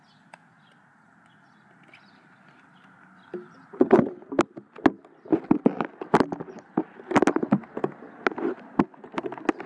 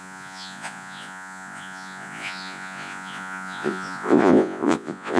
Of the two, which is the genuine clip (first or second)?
first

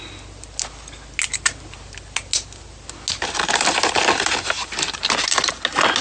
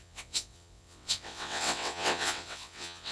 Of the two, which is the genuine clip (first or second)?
first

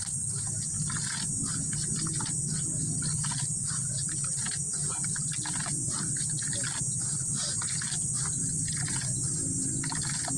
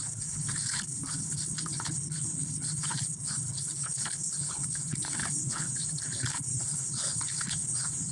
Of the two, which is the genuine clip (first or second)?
first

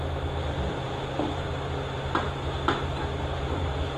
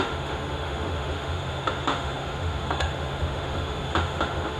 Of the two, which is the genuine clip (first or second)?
first